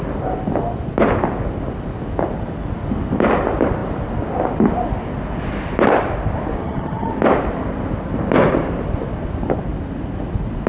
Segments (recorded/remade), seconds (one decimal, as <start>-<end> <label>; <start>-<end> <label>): 0.0-6.6 recorded; 6.6-7.1 remade; 7.1-10.7 recorded